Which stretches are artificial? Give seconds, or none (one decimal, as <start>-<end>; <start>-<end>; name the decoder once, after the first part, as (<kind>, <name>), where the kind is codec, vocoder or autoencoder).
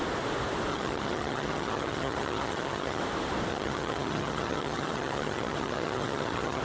0.7-3.0 (vocoder, HiFi-GAN); 3.5-6.6